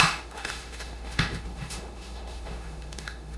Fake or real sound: fake